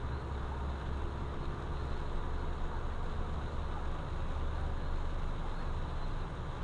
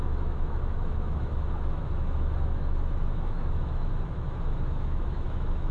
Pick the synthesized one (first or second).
second